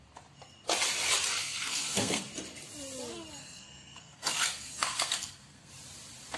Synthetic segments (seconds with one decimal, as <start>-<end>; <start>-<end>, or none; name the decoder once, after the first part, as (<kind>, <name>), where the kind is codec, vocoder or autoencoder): 1.4-2.2 (codec, SNAC); 3.4-5.7